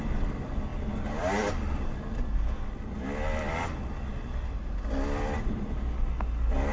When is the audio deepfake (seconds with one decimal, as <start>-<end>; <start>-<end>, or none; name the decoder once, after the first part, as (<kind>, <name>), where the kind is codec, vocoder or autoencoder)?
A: none